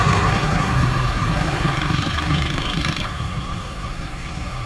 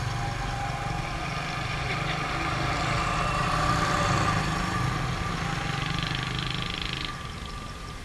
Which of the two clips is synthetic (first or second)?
first